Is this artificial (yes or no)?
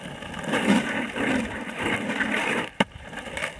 yes